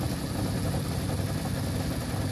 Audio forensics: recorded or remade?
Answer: recorded